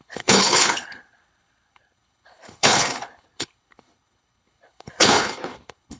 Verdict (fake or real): fake